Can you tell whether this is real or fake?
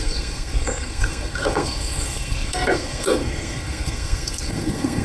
fake